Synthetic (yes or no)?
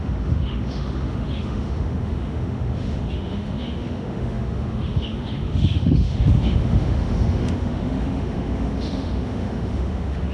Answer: yes